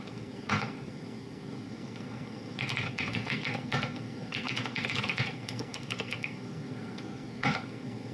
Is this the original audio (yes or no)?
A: no